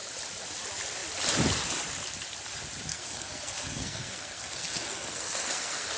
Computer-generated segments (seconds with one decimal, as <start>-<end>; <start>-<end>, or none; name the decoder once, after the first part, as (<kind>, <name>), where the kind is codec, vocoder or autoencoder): 2.9-6.0 (codec, SNAC)